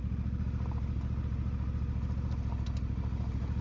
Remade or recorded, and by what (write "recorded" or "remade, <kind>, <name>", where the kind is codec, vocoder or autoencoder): recorded